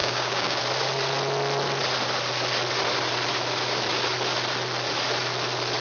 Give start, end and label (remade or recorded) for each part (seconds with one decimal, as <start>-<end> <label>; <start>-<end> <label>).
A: 0.0-0.6 remade; 0.6-5.8 recorded